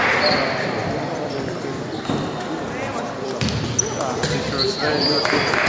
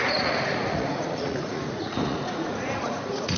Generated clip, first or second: second